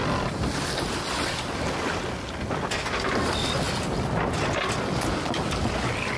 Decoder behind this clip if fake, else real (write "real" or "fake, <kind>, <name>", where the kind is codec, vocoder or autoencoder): real